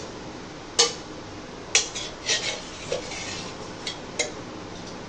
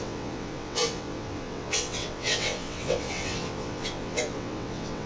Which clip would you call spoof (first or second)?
second